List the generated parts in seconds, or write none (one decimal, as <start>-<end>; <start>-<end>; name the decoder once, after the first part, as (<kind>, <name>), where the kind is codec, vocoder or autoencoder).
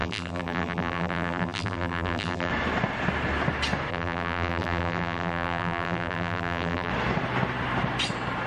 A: 0.0-2.5 (vocoder, BigVGAN v2); 3.9-6.9